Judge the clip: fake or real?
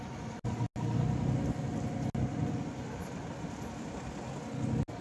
real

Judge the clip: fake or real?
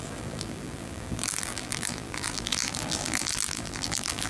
fake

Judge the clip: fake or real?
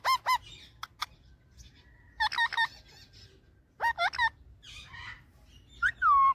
real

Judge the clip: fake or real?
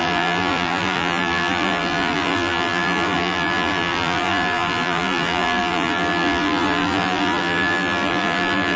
fake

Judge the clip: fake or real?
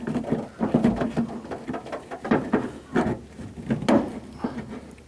real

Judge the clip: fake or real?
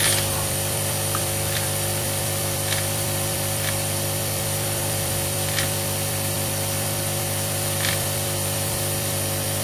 fake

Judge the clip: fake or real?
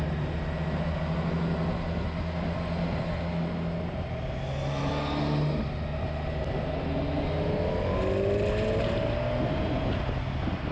real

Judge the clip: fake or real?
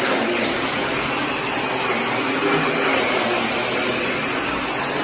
real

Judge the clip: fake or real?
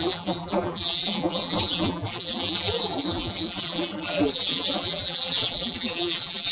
fake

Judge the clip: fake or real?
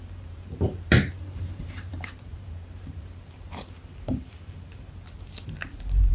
fake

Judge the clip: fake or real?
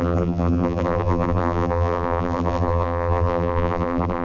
fake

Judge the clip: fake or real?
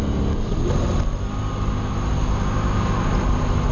real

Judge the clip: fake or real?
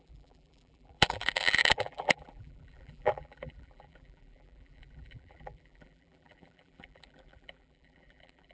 fake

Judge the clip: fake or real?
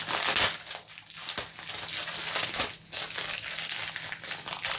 real